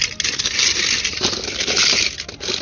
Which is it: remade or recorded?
recorded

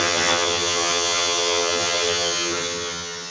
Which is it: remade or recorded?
remade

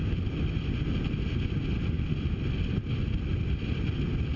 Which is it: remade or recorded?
recorded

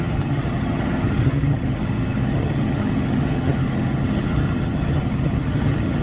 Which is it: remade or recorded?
remade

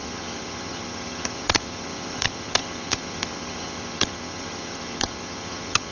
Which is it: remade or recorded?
remade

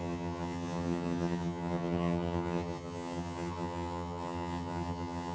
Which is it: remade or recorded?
remade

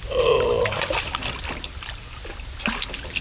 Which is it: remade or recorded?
recorded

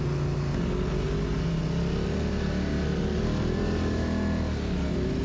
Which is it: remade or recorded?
recorded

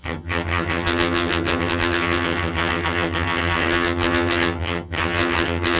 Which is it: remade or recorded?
remade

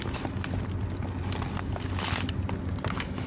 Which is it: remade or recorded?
recorded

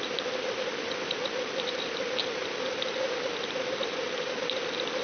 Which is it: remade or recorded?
recorded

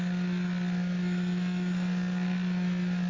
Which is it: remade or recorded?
recorded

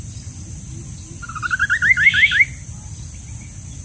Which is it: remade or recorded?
recorded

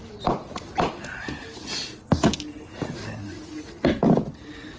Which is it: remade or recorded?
recorded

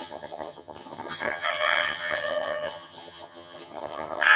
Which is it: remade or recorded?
remade